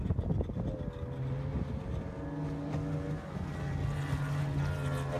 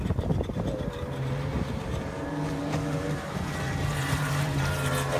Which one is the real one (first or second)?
first